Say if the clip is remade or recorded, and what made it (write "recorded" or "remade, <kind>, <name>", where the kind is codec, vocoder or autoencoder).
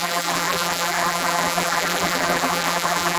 remade, vocoder, BigVGAN v2